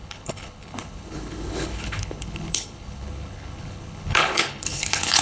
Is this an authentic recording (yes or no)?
no